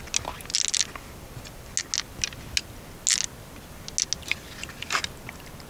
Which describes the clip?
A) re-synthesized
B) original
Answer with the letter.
B